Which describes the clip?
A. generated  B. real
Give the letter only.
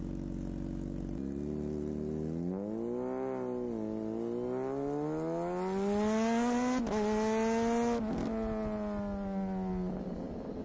B